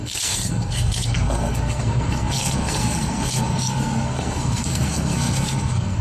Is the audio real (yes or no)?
no